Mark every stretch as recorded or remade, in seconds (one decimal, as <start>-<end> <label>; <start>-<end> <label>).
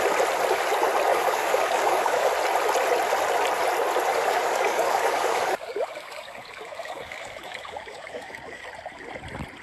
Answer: 0.0-1.1 recorded; 1.1-2.3 remade; 2.3-4.1 recorded; 4.1-8.6 remade; 8.6-9.6 recorded